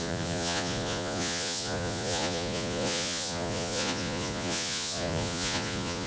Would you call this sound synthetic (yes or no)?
yes